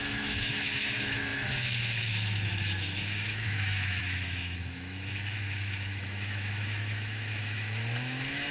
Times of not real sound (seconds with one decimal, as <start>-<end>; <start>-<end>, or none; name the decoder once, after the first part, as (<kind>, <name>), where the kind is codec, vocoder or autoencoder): 0.0-8.5 (autoencoder, DAC-VAE)